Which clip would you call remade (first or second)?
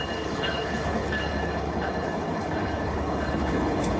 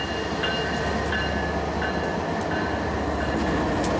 first